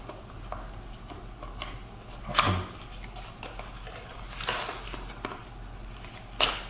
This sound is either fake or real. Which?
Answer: real